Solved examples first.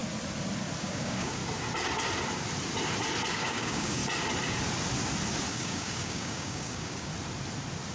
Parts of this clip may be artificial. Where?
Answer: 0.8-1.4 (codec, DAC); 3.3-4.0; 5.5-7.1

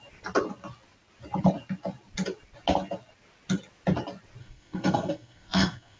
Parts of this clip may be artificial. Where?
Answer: 4.4-6.0 (codec, SNAC)

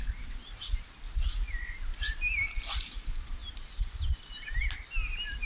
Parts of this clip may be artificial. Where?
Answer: none

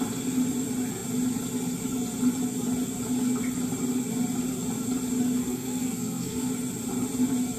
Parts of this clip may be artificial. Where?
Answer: 5.4-6.5 (codec, SNAC)

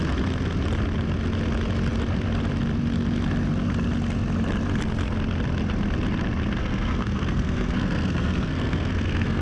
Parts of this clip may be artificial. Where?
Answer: 6.6-9.4 (codec, SNAC)

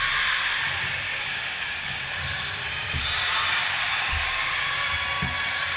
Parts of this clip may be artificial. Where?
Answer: 1.1-2.0 (codec, DAC); 3.6-4.5

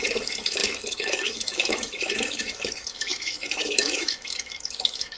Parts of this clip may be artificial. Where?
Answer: 0.0-5.2 (autoencoder, DAC-VAE)

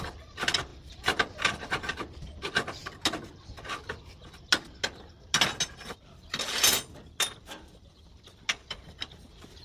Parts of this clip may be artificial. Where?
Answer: none